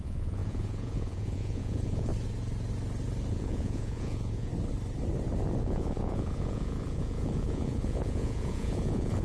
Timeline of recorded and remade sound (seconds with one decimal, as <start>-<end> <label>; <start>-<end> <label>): 0.0-2.1 remade; 2.1-3.3 recorded; 3.3-4.5 remade; 4.5-5.6 recorded; 5.6-9.2 remade

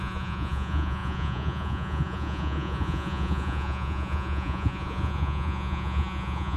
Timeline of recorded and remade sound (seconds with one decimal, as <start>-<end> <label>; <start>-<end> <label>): 0.0-6.6 remade